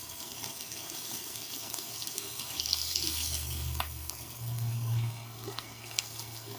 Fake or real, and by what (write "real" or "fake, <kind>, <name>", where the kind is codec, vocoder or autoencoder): fake, codec, SNAC